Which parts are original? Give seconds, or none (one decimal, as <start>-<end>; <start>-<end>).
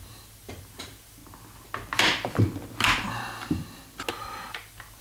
1.2-4.1